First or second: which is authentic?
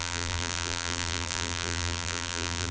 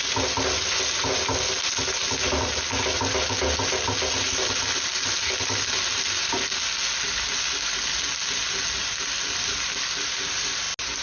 second